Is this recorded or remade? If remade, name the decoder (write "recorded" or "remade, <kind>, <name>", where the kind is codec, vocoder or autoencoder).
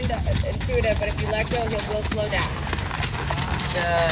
recorded